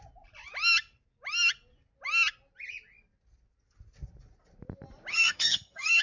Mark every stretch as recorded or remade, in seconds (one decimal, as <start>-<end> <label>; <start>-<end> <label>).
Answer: 0.0-5.1 recorded; 5.1-6.0 remade